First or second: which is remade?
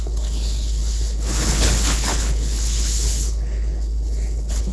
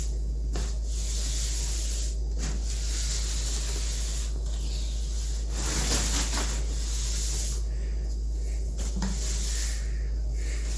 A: first